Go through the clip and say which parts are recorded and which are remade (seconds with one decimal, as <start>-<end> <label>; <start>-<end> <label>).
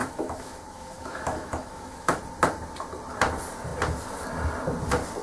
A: 0.0-2.2 remade; 2.2-5.2 recorded